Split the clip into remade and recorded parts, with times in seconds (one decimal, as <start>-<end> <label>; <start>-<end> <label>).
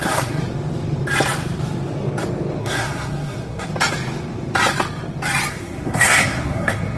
0.0-0.4 remade; 0.4-2.6 recorded; 2.6-3.7 remade; 3.7-5.5 recorded; 5.5-7.0 remade